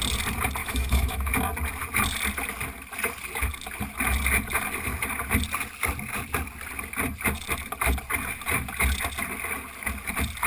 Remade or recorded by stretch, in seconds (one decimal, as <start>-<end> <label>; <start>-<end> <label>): 0.0-0.6 recorded; 0.6-1.3 remade; 1.3-10.5 recorded